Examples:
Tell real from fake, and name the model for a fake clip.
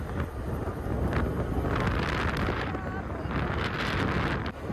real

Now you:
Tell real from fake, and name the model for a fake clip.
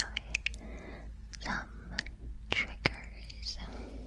real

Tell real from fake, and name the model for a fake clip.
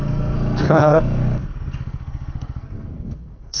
fake, codec, SNAC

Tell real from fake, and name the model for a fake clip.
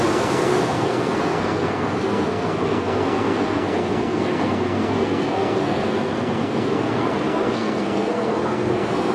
fake, codec, SNAC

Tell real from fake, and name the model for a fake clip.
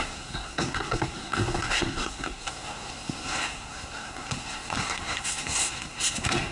fake, codec, SNAC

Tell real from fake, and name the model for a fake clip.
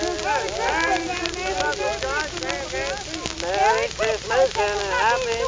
real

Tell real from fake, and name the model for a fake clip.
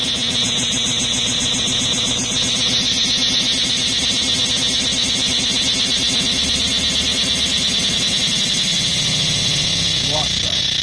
real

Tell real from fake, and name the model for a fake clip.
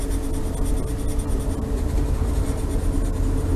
real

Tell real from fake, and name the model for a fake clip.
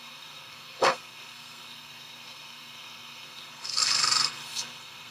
fake, codec, SNAC